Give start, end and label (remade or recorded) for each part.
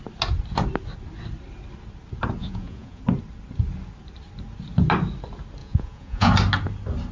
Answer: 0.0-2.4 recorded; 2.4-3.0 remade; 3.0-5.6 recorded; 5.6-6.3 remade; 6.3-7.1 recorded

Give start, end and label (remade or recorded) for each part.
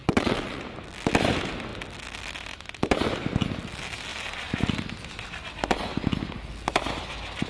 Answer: 0.0-0.6 remade; 0.6-7.5 recorded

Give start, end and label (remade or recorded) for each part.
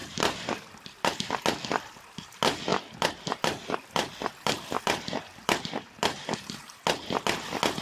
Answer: 0.0-2.7 recorded; 2.7-5.7 remade; 5.7-7.8 recorded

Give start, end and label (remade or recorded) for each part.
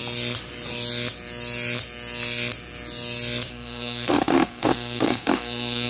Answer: 0.0-3.5 recorded; 3.5-5.9 remade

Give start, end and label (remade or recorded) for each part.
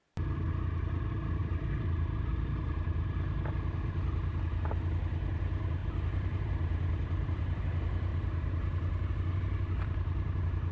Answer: 0.0-1.4 recorded; 1.4-2.9 remade; 2.9-5.8 recorded; 5.8-7.6 remade; 7.6-10.7 recorded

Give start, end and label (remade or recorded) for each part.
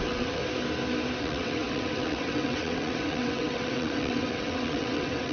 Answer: 0.0-0.4 remade; 0.4-1.2 recorded; 1.2-5.3 remade